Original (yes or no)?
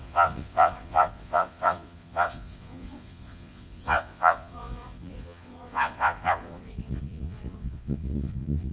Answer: no